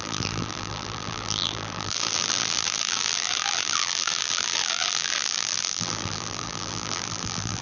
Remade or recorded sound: remade